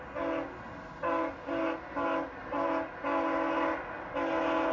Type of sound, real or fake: real